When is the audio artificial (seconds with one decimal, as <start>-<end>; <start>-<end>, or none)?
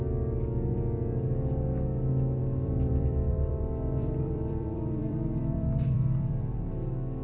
2.4-6.7